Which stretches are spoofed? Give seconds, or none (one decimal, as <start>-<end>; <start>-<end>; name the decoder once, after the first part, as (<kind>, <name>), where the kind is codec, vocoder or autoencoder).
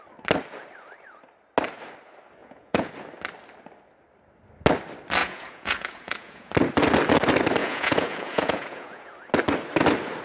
2.4-2.9 (vocoder, Vocos); 5.2-6.5; 7.6-9.1